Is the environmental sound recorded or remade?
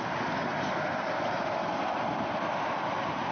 recorded